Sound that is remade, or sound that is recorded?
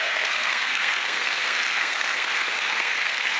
remade